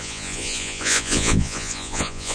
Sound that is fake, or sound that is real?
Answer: fake